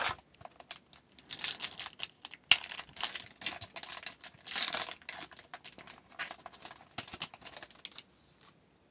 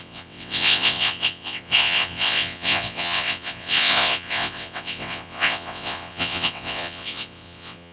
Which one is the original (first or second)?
first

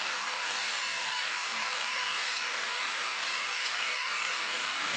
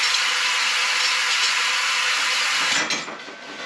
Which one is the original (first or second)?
second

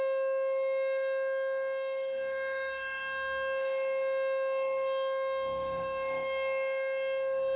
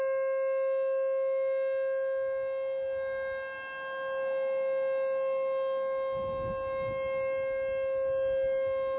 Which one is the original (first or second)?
second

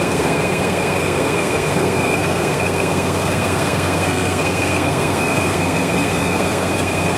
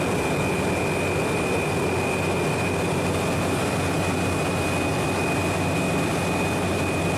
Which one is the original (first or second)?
second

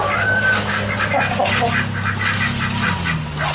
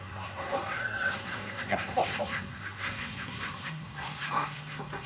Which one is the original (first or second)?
first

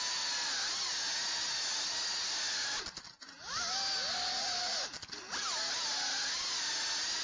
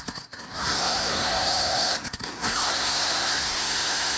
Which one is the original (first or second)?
first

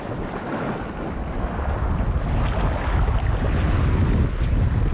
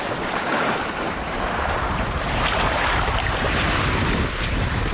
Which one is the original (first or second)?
first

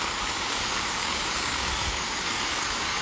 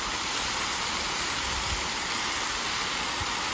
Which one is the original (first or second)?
second